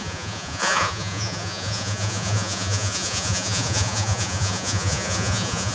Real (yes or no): no